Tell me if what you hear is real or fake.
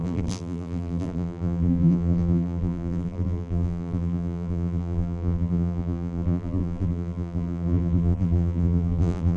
fake